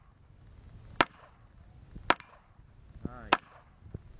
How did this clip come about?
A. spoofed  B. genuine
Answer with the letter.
B